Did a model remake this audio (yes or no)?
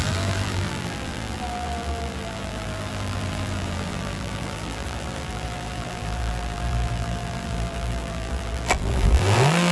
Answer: yes